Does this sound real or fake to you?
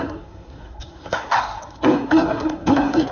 fake